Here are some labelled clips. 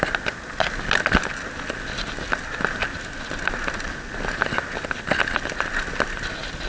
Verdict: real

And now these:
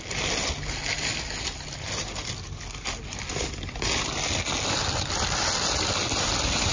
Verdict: real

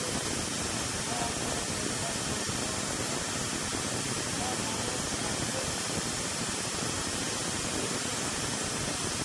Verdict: real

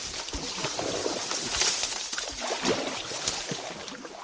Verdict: real